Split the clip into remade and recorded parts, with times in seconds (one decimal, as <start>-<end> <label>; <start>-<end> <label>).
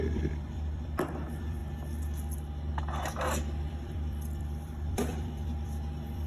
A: 0.0-1.6 remade; 1.6-3.7 recorded; 3.7-6.3 remade